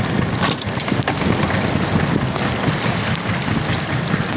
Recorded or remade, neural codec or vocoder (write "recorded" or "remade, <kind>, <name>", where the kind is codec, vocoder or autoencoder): recorded